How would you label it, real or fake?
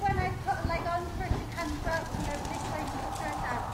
real